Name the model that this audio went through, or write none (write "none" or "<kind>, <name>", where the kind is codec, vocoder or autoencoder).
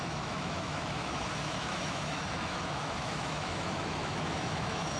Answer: autoencoder, DAC-VAE